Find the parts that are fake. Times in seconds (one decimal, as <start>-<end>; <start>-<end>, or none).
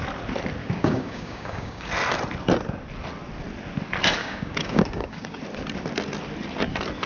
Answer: 0.6-1.9; 4.2-5.4